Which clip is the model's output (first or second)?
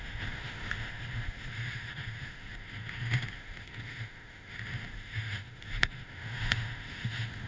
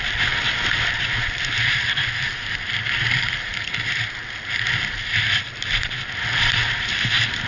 first